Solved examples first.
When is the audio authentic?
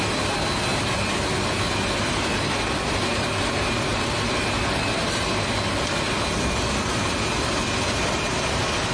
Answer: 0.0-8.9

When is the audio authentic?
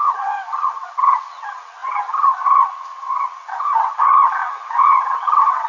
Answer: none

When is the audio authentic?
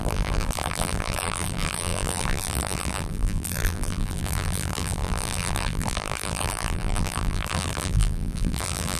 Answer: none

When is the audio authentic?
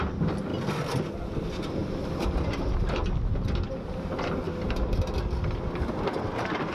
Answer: 0.0-0.5; 1.0-6.7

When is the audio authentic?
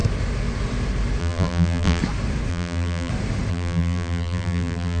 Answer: 0.0-1.2; 2.0-2.5; 3.1-3.5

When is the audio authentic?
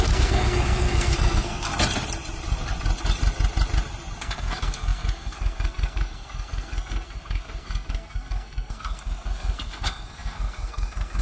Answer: 1.7-4.2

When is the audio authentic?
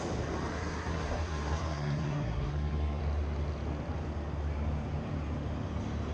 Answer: 0.0-0.5; 3.0-6.1